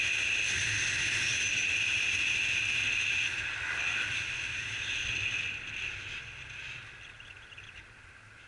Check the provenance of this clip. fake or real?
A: real